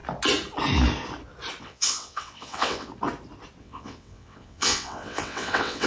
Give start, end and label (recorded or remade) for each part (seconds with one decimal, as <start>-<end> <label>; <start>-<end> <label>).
0.0-1.6 recorded; 1.6-2.9 remade; 2.9-3.6 recorded; 3.6-5.9 remade